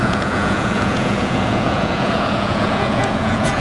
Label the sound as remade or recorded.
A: remade